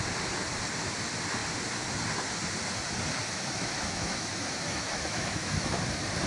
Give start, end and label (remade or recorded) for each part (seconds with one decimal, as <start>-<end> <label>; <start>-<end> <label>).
0.0-3.2 recorded; 3.2-5.8 remade; 5.8-6.3 recorded